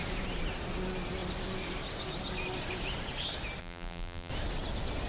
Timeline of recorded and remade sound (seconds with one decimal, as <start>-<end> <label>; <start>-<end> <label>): 0.0-3.6 recorded; 3.6-4.3 remade; 4.3-5.1 recorded